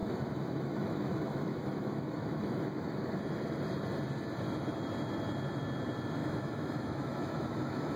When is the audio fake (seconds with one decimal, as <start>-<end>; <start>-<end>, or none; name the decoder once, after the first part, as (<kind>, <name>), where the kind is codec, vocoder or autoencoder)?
0.0-3.2 (autoencoder, DAC-VAE); 6.2-8.0